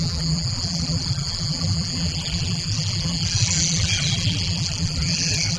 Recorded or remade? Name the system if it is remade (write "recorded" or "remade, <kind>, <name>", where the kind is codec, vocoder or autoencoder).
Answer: remade, vocoder, BigVGAN v2